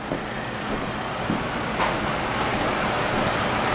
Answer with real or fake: real